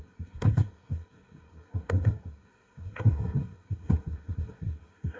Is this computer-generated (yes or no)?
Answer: yes